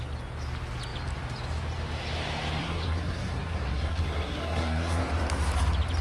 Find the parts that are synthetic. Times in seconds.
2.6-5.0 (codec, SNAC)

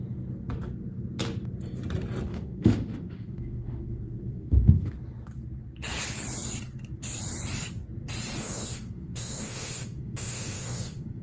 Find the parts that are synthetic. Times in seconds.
2.3-4.9 (autoencoder, DAC-VAE); 8.4-11.2

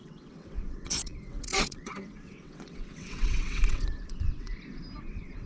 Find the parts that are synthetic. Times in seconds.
0.0-4.5 (vocoder, WaveNeXt); 5.0-5.5

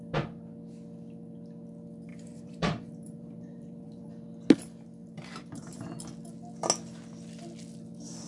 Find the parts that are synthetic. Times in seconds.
2.1-4.1 (vocoder, BigVGAN v2); 5.0-5.8

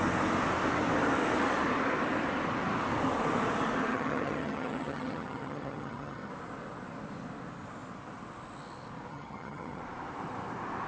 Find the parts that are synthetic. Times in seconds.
3.9-6.3 (vocoder, HiFi-GAN); 9.1-9.8

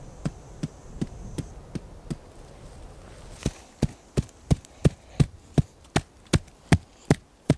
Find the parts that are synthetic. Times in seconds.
none